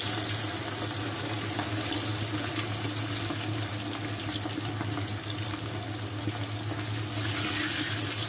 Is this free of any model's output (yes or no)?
yes